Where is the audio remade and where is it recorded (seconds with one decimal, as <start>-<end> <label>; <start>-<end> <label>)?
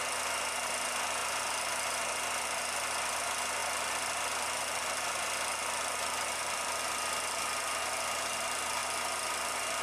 0.0-3.6 recorded; 3.6-6.8 remade; 6.8-8.8 recorded; 8.8-9.8 remade